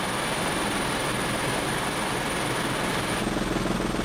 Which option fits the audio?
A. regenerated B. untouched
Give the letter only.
B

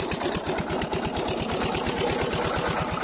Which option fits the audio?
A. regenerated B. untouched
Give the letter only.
B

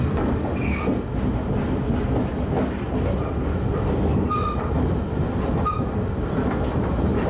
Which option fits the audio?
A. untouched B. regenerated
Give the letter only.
A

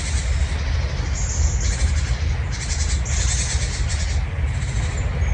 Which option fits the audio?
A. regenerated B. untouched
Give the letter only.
B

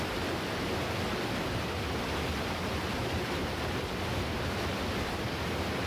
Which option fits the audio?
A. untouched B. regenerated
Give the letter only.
A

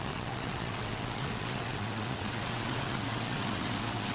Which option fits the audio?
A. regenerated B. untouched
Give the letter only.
A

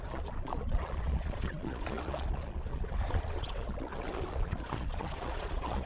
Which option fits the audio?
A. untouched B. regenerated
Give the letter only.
B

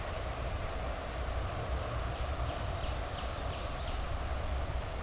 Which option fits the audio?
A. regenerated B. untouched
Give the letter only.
B